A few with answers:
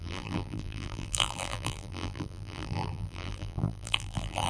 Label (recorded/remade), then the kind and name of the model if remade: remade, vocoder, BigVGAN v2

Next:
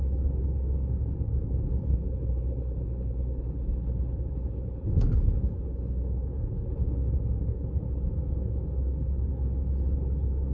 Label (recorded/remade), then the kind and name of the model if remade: remade, codec, HILCodec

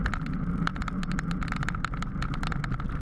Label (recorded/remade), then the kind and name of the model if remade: recorded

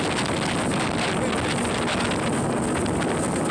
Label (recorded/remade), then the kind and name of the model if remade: recorded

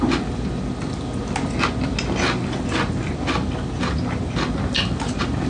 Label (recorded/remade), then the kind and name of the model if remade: recorded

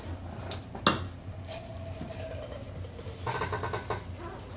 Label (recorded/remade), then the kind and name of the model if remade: recorded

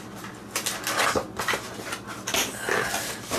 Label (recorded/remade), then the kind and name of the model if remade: recorded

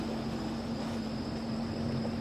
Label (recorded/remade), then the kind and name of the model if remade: recorded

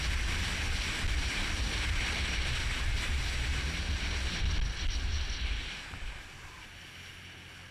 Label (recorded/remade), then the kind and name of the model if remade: recorded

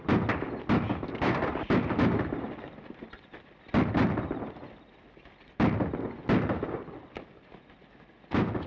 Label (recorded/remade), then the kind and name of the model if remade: recorded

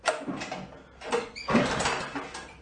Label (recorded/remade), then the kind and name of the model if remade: recorded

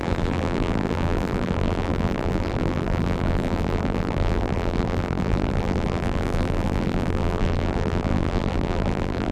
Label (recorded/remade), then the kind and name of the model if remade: remade, vocoder, BigVGAN v2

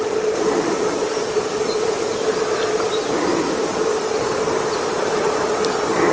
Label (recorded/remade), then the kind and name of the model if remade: recorded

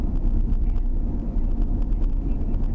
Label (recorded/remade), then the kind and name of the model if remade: recorded